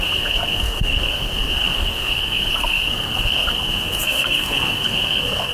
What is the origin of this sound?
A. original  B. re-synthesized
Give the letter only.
B